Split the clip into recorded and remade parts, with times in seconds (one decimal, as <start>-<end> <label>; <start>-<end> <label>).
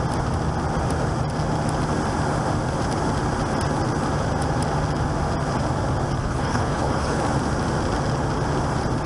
0.0-6.2 recorded; 6.2-7.2 remade; 7.2-9.1 recorded